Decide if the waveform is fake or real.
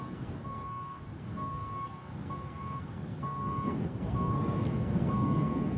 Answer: fake